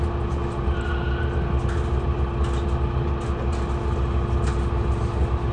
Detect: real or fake real